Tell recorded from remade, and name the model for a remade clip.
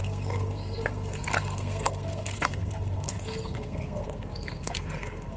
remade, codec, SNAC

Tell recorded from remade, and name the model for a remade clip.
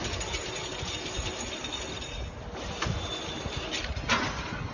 recorded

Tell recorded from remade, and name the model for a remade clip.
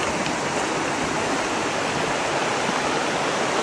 recorded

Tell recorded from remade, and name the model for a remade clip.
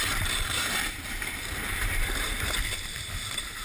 remade, vocoder, BigVGAN v2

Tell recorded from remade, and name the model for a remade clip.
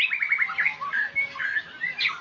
recorded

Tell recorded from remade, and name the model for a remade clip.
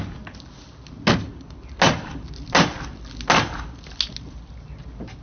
recorded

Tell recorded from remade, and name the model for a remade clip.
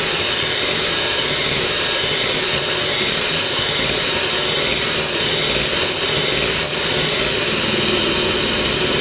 recorded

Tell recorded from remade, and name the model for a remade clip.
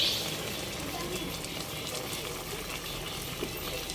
recorded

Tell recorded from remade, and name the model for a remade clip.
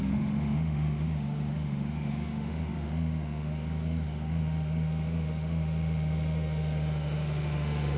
remade, autoencoder, DAC-VAE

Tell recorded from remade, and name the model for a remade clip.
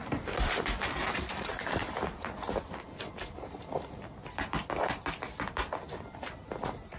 remade, vocoder, BigVGAN v2